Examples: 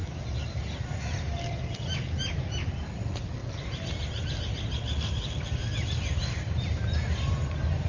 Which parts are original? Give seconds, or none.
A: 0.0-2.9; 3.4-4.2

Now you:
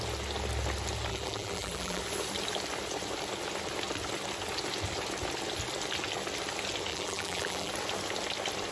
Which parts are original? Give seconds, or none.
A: 0.0-1.1; 2.0-6.9; 7.7-8.7

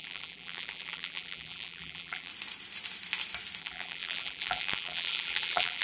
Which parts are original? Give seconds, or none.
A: 2.3-3.6

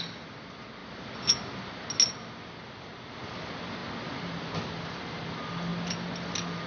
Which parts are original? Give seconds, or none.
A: 0.0-6.7